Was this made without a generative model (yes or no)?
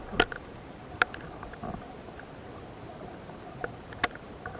yes